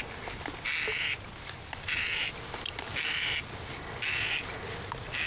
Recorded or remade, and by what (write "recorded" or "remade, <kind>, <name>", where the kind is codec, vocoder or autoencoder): recorded